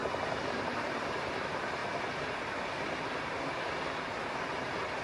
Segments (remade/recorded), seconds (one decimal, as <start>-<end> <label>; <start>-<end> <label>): 0.0-1.8 remade; 1.8-5.0 recorded